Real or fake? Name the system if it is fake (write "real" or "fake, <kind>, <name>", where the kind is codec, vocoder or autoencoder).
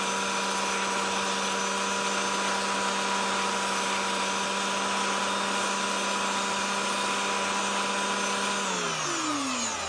real